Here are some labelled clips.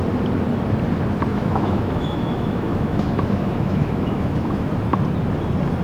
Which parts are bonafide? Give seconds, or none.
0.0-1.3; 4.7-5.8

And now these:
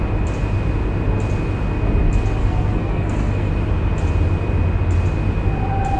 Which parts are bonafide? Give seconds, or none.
0.0-2.4; 3.5-6.0

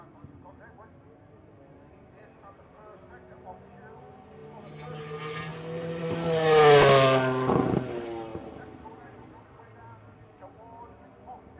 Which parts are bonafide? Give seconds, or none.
0.0-11.6

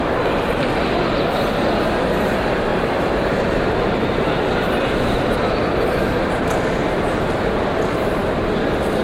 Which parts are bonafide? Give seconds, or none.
0.0-2.7; 4.3-9.0

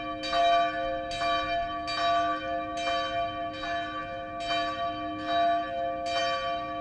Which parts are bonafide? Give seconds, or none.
0.0-6.8